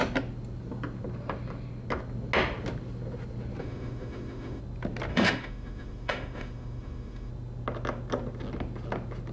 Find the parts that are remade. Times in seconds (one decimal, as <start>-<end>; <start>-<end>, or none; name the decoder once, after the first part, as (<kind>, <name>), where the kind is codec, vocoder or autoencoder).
3.6-4.6 (autoencoder, DAC-VAE); 5.1-7.3